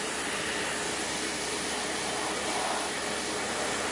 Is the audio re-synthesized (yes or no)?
no